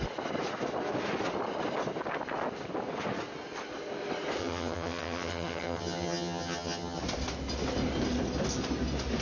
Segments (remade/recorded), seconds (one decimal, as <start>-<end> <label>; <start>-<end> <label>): 0.0-4.4 recorded; 4.4-7.0 remade; 7.0-9.2 recorded